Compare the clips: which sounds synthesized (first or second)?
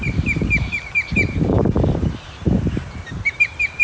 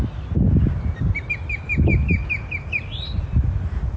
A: first